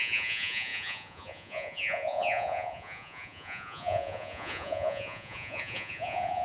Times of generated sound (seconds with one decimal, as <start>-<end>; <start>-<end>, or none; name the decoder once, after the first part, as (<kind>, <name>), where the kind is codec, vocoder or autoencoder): 0.0-6.4 (vocoder, Vocos)